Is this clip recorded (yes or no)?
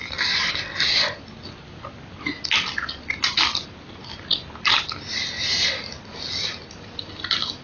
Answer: yes